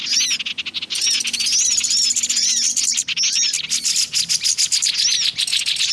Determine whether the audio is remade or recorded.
recorded